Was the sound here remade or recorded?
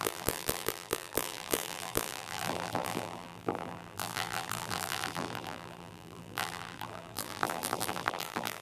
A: remade